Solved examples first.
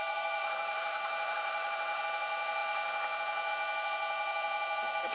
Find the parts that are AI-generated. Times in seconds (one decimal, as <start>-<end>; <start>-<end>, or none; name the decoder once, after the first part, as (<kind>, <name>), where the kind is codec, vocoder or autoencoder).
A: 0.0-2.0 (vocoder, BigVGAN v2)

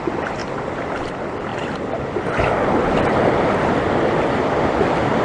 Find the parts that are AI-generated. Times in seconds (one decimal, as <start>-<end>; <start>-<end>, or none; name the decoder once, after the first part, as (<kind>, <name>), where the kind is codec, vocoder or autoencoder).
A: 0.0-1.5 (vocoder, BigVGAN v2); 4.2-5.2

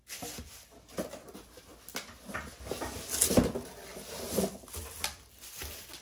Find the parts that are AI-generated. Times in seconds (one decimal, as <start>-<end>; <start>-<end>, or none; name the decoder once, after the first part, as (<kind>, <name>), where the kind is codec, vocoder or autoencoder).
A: none

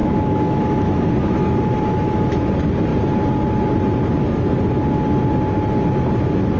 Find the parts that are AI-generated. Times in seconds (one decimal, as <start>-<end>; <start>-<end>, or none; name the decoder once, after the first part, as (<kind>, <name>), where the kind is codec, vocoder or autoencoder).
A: 0.0-2.5 (autoencoder, DAC-VAE)

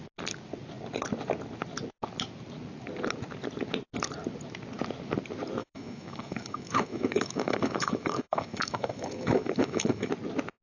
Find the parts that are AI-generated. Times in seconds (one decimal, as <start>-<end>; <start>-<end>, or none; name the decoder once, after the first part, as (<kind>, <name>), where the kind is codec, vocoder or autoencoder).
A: 5.6-10.1 (autoencoder, DAC-VAE)